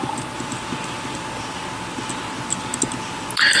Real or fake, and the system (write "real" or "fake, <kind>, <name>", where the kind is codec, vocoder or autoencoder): real